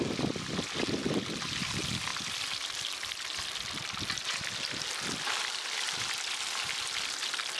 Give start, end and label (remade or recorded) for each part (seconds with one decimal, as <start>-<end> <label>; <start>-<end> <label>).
0.0-7.6 recorded